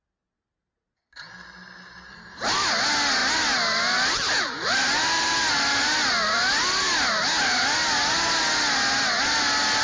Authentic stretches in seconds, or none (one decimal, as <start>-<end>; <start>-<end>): 0.0-9.8